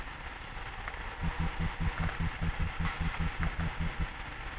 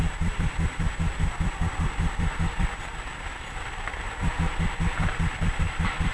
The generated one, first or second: second